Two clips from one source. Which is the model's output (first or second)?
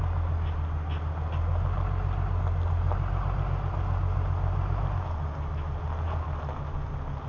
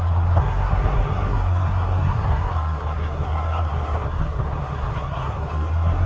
second